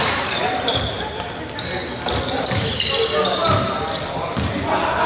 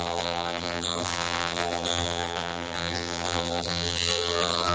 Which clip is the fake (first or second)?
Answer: second